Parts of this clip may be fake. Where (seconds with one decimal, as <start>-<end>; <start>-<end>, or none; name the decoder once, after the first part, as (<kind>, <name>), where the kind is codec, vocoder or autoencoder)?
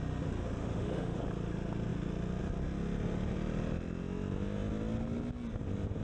0.6-1.2 (autoencoder, DAC-VAE)